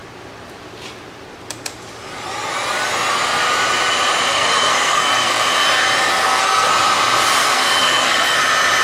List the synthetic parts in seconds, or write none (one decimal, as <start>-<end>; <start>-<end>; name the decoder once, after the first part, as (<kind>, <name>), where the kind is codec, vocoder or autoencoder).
4.3-5.4 (codec, SNAC); 6.1-6.7; 7.4-8.4